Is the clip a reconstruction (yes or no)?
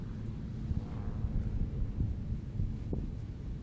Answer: no